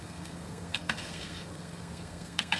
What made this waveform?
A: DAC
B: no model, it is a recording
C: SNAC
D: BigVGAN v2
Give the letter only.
C